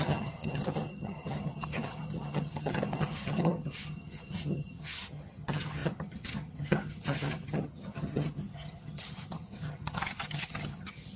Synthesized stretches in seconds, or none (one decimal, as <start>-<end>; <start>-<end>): 0.0-11.2